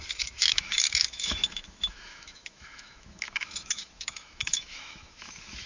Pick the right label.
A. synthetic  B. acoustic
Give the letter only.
A